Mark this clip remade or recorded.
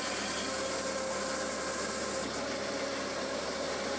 recorded